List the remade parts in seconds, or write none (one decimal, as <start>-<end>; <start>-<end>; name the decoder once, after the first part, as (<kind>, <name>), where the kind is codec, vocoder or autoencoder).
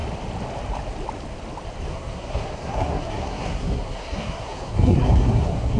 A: 1.9-5.8 (codec, SNAC)